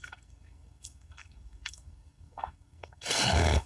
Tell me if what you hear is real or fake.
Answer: fake